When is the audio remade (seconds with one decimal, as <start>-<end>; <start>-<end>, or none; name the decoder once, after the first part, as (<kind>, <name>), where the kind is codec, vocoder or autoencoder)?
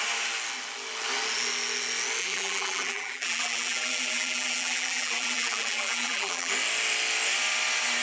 2.2-6.5 (vocoder, BigVGAN v2)